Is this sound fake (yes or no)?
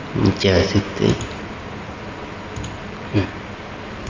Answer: no